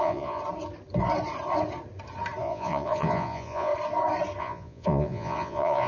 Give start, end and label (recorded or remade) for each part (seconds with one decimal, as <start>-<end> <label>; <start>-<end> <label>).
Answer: 0.0-0.4 remade; 0.4-2.4 recorded; 2.4-3.7 remade; 3.7-4.4 recorded; 4.4-5.9 remade